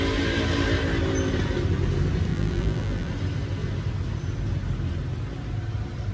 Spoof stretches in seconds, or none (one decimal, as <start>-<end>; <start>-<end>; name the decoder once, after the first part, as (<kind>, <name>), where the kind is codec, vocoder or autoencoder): 2.3-3.1 (vocoder, BigVGAN v2)